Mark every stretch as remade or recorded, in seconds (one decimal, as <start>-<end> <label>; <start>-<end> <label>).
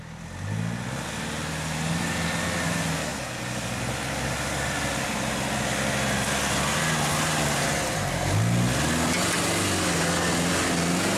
0.0-11.2 recorded